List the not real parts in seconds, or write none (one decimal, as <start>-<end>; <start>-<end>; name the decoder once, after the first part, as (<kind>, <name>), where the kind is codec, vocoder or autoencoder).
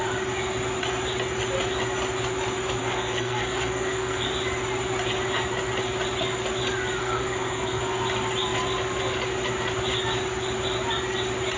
2.8-4.3 (codec, SNAC); 7.0-7.8